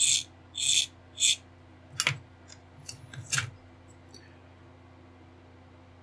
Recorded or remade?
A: recorded